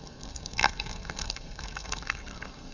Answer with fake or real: fake